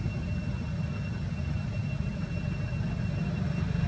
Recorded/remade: recorded